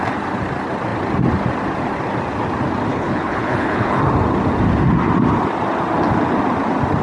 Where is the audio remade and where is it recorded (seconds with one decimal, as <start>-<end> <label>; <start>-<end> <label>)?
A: 0.0-2.9 recorded; 2.9-4.0 remade; 4.0-7.0 recorded